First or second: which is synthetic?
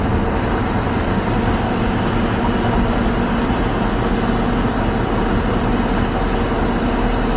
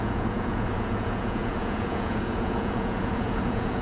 second